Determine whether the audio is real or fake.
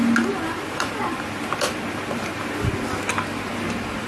real